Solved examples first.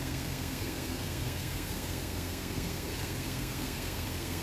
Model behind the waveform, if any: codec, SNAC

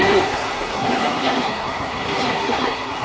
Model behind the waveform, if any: codec, SNAC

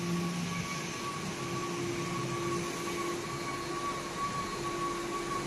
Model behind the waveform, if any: none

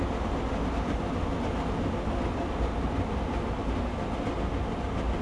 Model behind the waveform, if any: none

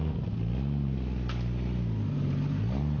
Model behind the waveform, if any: none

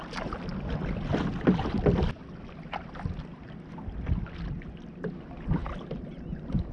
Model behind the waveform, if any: none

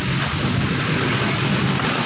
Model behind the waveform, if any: none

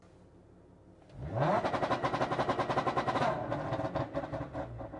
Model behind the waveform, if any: none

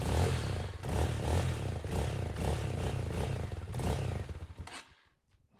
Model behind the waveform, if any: none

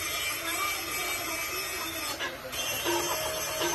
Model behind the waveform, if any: none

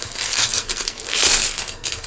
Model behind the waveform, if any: codec, SNAC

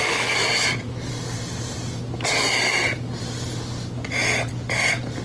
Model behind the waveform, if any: none